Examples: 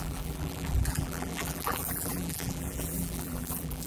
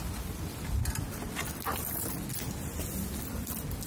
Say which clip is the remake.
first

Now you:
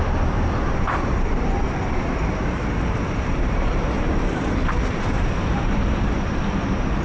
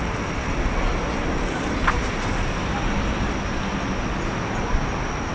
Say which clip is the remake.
first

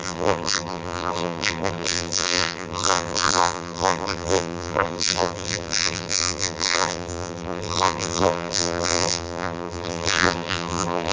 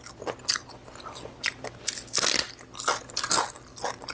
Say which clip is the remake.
first